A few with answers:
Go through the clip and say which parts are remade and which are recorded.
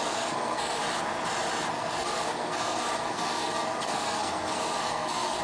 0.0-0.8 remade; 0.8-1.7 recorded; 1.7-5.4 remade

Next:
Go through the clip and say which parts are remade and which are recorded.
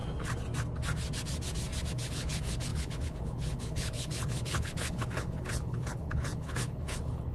0.0-1.9 recorded; 1.9-7.3 remade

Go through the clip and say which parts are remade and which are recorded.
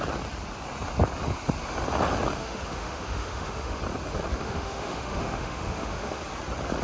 0.0-2.4 recorded; 2.4-3.8 remade; 3.8-4.4 recorded; 4.4-6.2 remade; 6.2-6.8 recorded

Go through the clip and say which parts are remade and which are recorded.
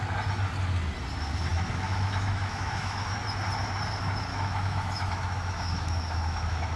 0.0-1.5 recorded; 1.5-3.2 remade; 3.2-4.3 recorded; 4.3-6.8 remade